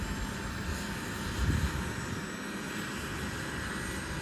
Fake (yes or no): no